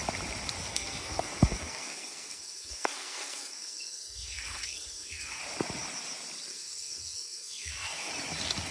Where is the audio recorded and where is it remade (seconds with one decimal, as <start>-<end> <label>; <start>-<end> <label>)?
0.0-0.7 recorded; 0.7-5.4 remade; 5.4-6.5 recorded; 6.5-8.1 remade; 8.1-8.7 recorded